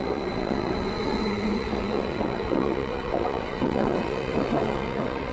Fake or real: fake